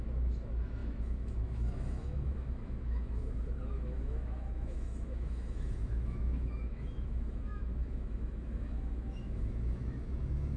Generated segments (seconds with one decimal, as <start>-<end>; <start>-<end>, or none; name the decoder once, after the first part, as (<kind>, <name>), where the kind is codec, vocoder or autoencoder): 0.0-10.6 (autoencoder, DAC-VAE)